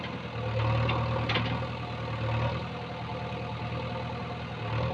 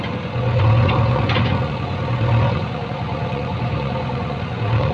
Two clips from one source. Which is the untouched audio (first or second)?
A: first